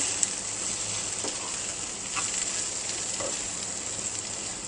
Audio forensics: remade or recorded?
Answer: recorded